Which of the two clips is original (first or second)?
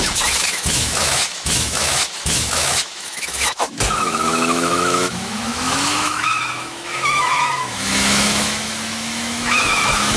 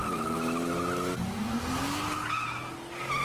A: second